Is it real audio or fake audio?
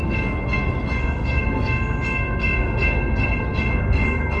fake